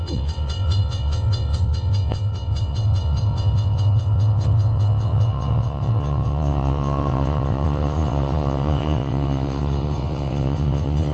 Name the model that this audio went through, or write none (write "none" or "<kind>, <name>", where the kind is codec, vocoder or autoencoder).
vocoder, WaveNeXt